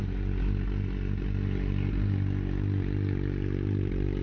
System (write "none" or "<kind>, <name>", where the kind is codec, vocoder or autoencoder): none